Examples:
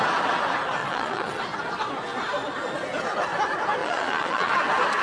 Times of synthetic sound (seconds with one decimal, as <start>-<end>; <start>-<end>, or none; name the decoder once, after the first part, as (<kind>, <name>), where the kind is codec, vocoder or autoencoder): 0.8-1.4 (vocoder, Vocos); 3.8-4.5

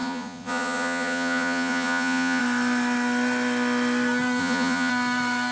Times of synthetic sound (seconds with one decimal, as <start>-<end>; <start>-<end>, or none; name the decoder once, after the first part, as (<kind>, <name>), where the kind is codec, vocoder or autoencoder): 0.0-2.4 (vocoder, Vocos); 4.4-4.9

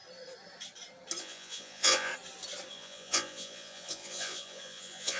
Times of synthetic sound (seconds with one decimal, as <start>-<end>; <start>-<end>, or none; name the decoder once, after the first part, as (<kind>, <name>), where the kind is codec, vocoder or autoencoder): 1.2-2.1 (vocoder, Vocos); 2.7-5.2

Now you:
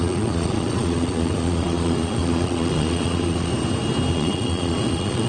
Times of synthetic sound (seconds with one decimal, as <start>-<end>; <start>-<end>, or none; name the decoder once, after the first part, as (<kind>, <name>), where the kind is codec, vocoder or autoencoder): 0.0-3.5 (vocoder, Vocos); 4.1-5.3

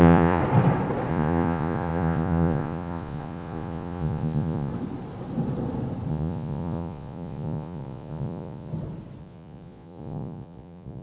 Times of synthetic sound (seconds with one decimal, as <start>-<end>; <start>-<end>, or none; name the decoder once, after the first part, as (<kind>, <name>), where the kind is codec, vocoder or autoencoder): 0.0-0.4 (vocoder, Vocos); 1.1-4.7; 6.1-8.7; 9.2-11.0